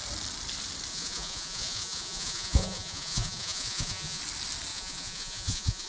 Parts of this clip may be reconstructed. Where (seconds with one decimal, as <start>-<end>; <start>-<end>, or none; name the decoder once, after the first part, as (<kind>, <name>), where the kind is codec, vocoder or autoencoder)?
0.9-4.2 (vocoder, Vocos); 4.7-5.9